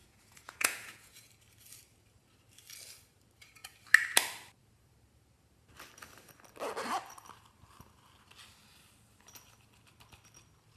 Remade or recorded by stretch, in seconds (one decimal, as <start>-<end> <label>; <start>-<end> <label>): 0.0-1.3 remade; 1.3-10.8 recorded